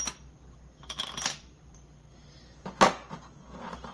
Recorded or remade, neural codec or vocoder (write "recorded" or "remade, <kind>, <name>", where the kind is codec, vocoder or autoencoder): recorded